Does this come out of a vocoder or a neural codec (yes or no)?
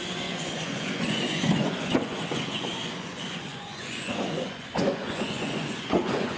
yes